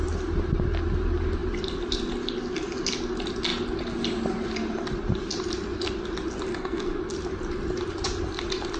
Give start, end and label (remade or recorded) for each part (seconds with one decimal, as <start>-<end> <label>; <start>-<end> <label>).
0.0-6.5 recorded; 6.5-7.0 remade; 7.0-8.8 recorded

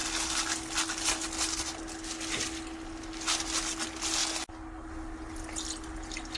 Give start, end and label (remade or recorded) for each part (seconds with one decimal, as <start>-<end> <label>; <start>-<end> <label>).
0.0-6.4 recorded

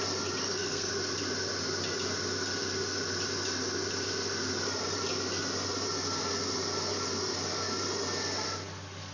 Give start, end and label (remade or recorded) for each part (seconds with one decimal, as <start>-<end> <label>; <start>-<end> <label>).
0.0-0.4 recorded; 0.4-0.9 remade; 0.9-9.1 recorded